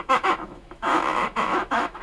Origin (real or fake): fake